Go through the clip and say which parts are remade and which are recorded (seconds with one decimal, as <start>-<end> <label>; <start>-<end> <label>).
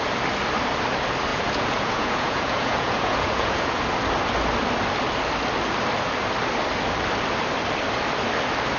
0.0-1.3 recorded; 1.3-3.8 remade; 3.8-8.8 recorded